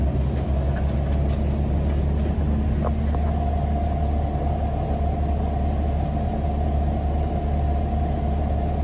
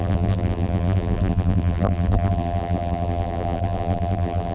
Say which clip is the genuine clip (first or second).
first